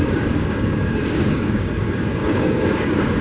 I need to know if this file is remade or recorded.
remade